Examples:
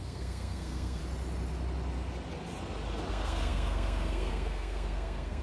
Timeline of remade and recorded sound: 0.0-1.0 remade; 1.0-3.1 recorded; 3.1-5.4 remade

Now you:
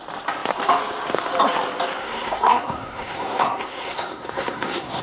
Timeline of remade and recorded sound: 0.0-2.0 recorded; 2.0-5.0 remade

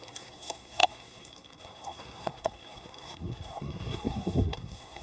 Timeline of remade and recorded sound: 0.0-5.0 remade